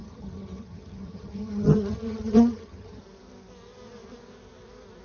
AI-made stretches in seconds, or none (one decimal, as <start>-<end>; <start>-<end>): 0.0-3.0